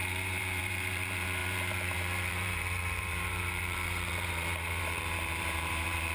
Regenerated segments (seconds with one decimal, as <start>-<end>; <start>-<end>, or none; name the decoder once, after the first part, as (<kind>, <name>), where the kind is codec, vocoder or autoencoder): 0.0-6.1 (vocoder, BigVGAN v2)